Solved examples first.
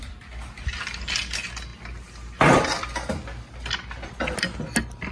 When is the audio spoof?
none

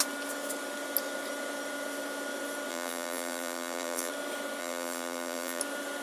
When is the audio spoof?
2.7-4.1 (vocoder, BigVGAN v2); 4.6-5.6

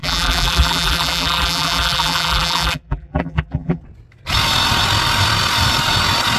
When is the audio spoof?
0.0-3.8 (vocoder, BigVGAN v2)

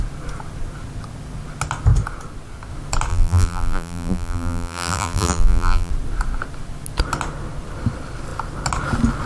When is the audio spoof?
3.1-5.9 (vocoder, BigVGAN v2)

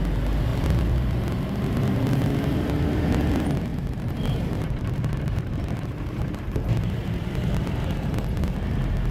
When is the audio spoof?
3.7-5.6 (vocoder, BigVGAN v2); 7.0-8.2

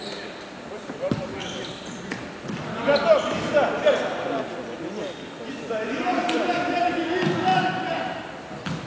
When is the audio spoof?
6.1-6.9 (vocoder, BigVGAN v2)